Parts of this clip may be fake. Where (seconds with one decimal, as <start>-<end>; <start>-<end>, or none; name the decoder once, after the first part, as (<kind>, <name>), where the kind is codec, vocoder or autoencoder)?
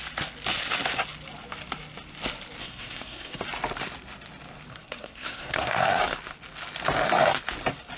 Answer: 2.6-3.4 (codec, SNAC); 4.7-6.0